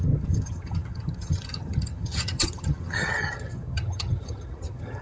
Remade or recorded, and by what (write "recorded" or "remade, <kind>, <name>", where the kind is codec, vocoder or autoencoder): remade, vocoder, HiFi-GAN